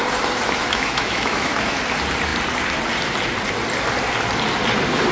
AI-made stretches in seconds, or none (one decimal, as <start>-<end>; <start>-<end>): 0.6-1.8

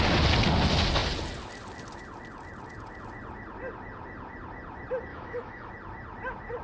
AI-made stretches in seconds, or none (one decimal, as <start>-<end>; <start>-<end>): 5.1-5.7

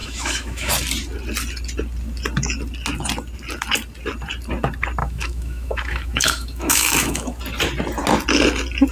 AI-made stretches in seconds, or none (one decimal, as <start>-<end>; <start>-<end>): 0.0-0.7; 5.0-7.4

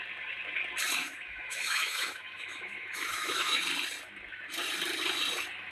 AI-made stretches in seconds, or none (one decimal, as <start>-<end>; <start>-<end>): 1.0-3.6